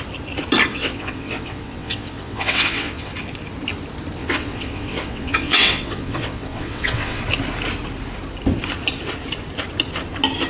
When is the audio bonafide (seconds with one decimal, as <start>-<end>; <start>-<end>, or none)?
0.0-0.7; 3.1-4.2; 7.2-10.5